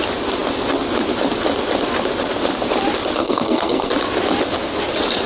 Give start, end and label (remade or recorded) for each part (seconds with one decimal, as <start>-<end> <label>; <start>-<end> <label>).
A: 0.0-3.2 recorded; 3.2-3.9 remade; 3.9-5.3 recorded